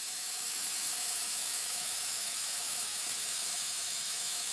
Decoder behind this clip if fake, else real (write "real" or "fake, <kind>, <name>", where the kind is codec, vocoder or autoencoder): fake, autoencoder, DAC-VAE